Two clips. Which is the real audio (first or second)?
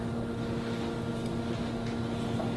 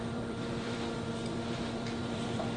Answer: first